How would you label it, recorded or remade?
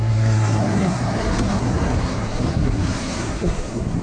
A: remade